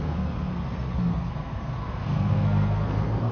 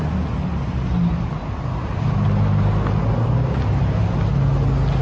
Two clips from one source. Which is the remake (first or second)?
first